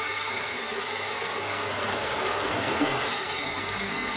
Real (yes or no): no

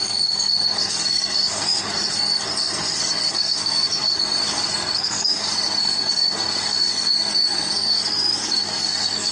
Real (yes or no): no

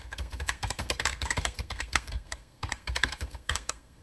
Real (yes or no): no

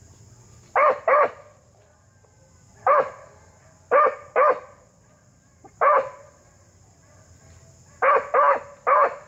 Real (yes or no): yes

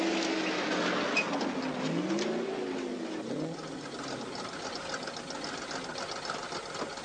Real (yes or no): yes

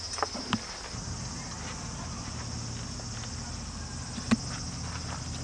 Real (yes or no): yes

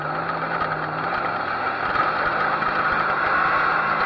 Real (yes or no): yes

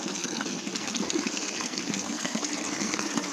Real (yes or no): no